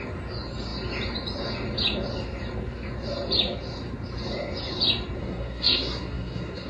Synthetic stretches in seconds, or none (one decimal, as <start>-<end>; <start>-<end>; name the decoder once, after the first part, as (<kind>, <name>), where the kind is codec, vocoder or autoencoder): 5.2-6.7 (codec, SNAC)